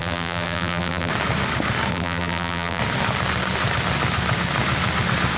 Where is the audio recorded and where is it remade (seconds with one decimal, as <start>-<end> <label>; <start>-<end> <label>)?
0.0-1.1 remade; 1.1-1.9 recorded; 1.9-2.8 remade; 2.8-5.4 recorded